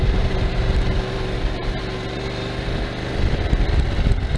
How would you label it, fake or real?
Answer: real